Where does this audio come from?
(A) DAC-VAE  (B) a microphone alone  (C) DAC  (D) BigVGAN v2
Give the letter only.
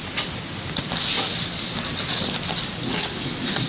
B